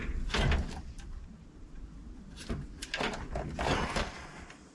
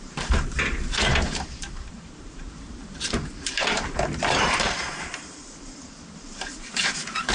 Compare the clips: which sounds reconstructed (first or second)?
second